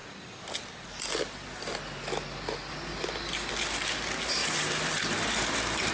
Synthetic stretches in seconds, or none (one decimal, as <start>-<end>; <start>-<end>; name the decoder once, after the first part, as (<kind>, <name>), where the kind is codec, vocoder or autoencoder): 4.4-5.9 (vocoder, BigVGAN v2)